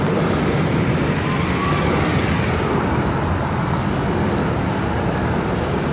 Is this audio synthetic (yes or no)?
no